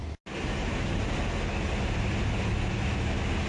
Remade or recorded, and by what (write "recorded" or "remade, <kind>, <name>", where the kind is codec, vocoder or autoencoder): recorded